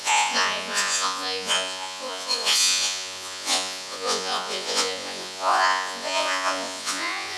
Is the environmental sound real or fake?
fake